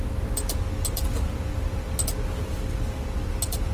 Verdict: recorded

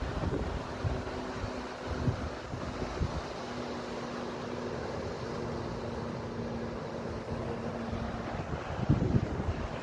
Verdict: recorded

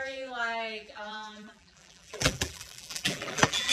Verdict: remade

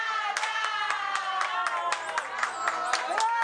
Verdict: recorded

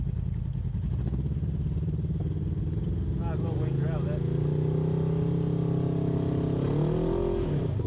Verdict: recorded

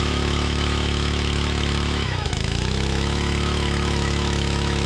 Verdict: remade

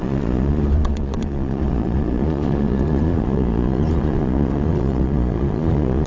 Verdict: remade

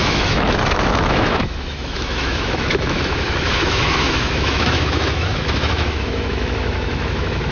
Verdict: remade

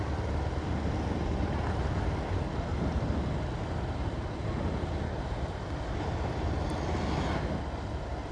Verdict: recorded